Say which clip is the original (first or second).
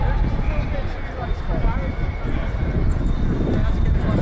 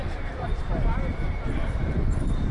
first